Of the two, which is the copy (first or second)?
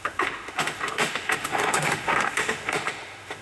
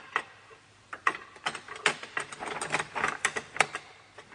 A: first